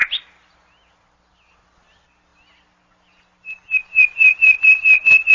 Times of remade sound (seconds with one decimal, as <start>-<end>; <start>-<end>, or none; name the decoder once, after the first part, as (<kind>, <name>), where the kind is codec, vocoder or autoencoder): none